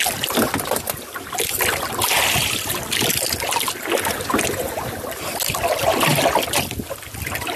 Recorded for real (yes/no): yes